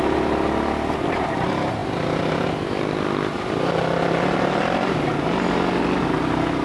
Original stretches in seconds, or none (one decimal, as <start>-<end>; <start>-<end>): 0.0-6.6